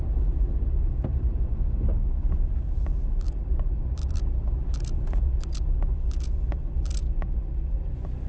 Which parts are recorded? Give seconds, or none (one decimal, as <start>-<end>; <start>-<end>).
0.0-8.3